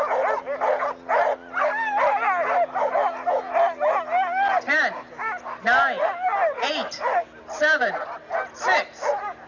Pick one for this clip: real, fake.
real